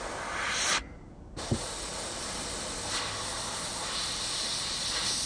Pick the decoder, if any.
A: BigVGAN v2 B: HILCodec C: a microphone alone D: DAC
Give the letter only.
C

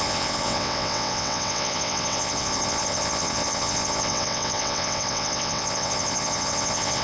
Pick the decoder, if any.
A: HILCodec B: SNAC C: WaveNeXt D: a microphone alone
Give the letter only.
C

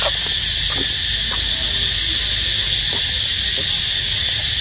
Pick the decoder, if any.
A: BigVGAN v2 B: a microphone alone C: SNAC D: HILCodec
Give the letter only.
B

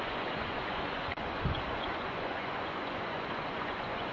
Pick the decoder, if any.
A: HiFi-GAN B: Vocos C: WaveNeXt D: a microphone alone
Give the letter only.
B